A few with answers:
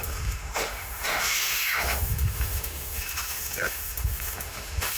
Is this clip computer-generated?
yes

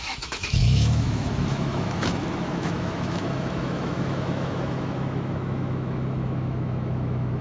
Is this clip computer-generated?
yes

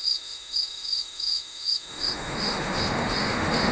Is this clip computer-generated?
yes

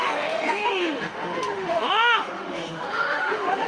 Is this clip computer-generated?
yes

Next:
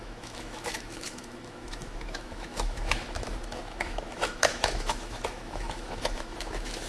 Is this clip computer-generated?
yes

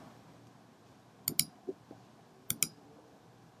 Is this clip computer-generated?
no